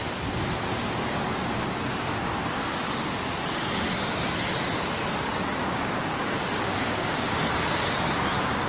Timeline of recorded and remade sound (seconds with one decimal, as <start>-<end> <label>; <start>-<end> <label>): 0.0-0.8 recorded; 0.8-2.2 remade; 2.2-5.3 recorded; 5.3-7.4 remade; 7.4-8.7 recorded